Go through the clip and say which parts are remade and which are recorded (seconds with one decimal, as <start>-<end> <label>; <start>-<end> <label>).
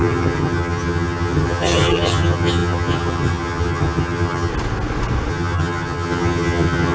0.0-4.5 remade; 4.5-5.3 recorded; 5.3-6.9 remade